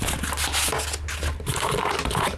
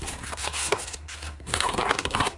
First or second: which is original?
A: first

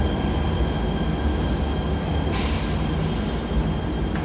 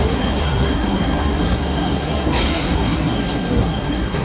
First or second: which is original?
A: first